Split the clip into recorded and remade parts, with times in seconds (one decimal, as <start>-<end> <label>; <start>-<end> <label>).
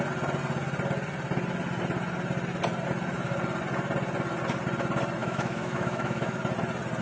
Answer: 0.0-5.2 recorded; 5.2-6.4 remade; 6.4-7.0 recorded